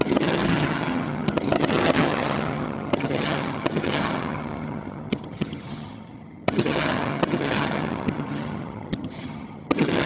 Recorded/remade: remade